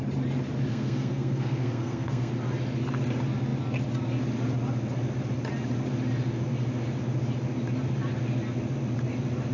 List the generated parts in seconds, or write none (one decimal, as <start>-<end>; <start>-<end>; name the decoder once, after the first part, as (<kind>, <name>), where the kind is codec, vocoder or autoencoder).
0.7-2.3 (codec, SNAC)